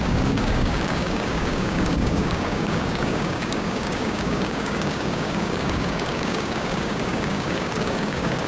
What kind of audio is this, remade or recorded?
remade